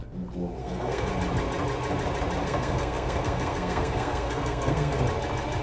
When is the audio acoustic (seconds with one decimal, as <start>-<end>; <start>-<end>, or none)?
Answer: 0.0-0.6; 1.1-2.4; 5.0-5.6